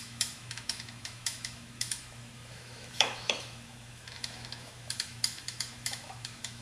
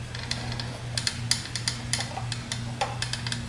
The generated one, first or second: first